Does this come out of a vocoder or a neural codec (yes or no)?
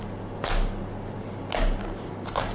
no